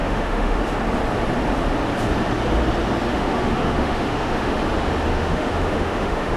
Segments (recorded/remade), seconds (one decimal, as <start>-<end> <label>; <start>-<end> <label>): 0.0-0.6 remade; 0.6-3.1 recorded; 3.1-4.6 remade; 4.6-5.1 recorded; 5.1-6.4 remade